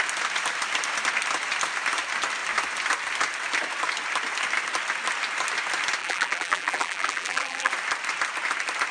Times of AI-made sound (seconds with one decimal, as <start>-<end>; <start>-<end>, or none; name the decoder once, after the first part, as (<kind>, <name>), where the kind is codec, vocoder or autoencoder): 6.0-7.7 (vocoder, BigVGAN v2)